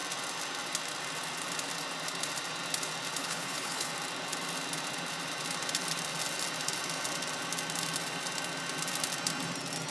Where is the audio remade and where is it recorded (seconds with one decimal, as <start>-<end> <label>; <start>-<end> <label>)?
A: 0.0-3.2 recorded; 3.2-3.9 remade; 3.9-9.9 recorded